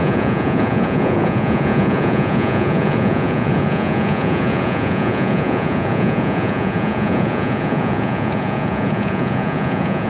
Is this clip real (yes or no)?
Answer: no